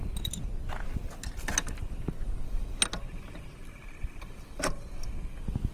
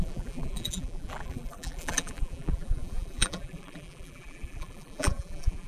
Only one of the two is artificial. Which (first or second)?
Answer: second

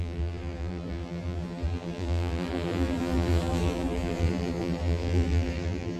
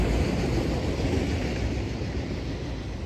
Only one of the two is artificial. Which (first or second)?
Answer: first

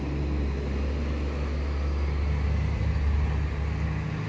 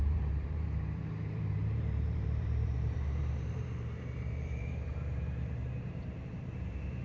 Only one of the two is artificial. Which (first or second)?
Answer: second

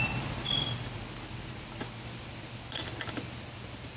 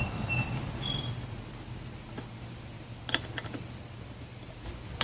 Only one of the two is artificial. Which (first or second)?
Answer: second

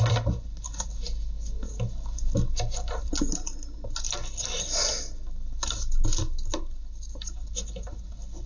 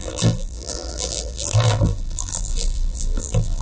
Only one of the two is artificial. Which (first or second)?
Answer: second